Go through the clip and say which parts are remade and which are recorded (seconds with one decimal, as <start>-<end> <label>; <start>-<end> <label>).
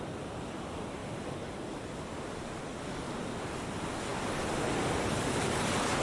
0.0-1.0 recorded; 1.0-3.5 remade; 3.5-4.1 recorded; 4.1-5.0 remade; 5.0-6.0 recorded